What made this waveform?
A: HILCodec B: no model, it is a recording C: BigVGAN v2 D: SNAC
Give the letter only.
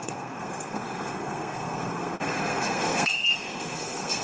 D